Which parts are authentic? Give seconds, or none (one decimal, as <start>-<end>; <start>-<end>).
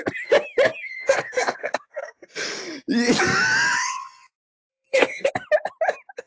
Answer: 0.0-0.9; 2.3-4.7; 5.3-6.3